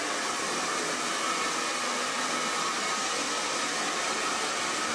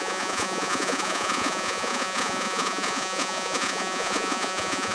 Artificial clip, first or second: second